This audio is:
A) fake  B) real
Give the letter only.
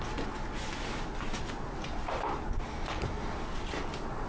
B